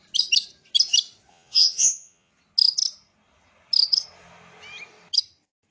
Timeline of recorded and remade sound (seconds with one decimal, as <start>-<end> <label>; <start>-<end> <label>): 0.0-1.3 recorded; 1.3-2.3 remade; 2.3-5.7 recorded